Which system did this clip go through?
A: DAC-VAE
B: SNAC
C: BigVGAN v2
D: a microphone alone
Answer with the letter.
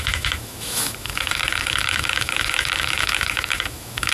A